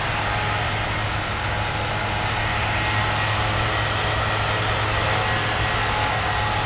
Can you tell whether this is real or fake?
real